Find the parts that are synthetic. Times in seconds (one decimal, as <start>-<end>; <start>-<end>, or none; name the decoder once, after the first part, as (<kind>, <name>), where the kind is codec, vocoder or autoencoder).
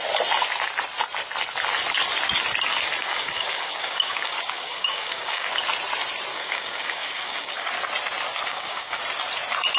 3.0-5.5 (codec, DAC); 6.3-7.7; 8.5-9.0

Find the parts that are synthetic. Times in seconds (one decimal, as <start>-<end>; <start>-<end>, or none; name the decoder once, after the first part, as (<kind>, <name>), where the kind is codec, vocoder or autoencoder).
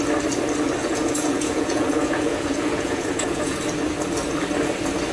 0.8-3.6 (vocoder, Vocos)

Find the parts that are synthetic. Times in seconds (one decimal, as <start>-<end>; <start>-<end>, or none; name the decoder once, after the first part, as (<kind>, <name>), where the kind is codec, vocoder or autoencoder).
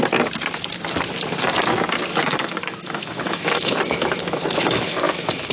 2.1-5.5 (autoencoder, DAC-VAE)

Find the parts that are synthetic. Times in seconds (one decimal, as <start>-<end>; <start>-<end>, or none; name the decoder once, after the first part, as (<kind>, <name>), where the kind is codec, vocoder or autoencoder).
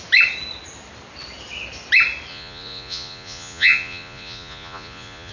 2.3-5.3 (vocoder, Vocos)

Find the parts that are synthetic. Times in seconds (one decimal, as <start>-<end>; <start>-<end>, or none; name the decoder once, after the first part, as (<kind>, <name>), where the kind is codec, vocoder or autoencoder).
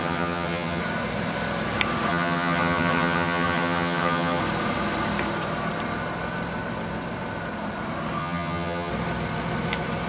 0.0-0.8 (vocoder, HiFi-GAN); 2.1-4.4; 8.2-8.9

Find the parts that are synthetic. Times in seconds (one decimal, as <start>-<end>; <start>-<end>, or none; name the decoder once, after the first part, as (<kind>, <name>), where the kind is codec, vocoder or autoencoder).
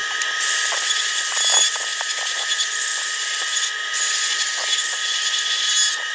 none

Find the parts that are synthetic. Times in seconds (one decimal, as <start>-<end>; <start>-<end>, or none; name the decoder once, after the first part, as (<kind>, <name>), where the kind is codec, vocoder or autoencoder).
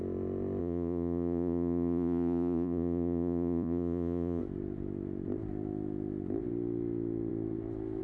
0.6-4.4 (vocoder, Vocos)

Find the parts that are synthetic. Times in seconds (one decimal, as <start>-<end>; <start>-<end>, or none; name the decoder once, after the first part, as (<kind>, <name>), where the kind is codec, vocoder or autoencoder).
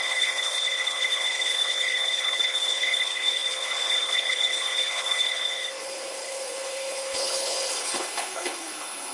0.0-9.1 (codec, HILCodec)